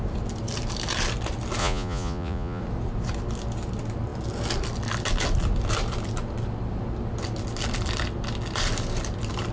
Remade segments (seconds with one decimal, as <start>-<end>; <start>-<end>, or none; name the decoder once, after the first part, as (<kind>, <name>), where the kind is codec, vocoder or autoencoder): 1.6-2.6 (vocoder, Vocos)